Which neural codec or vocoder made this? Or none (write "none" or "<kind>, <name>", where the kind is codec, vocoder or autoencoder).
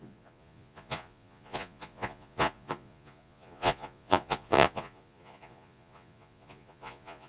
vocoder, Vocos